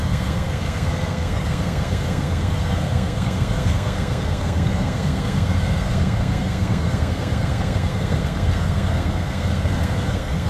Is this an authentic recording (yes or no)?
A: no